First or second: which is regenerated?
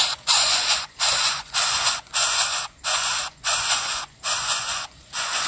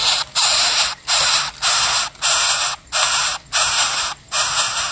first